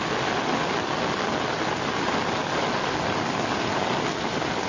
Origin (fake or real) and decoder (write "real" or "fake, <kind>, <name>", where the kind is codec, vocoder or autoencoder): real